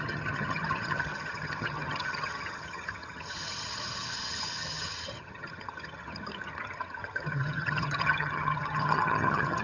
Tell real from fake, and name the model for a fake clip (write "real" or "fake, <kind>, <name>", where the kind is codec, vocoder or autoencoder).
fake, vocoder, HiFi-GAN